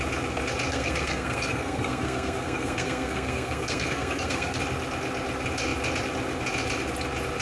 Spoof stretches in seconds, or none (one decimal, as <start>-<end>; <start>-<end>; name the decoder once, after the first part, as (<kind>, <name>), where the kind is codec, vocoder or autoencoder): 0.7-4.6 (codec, SNAC)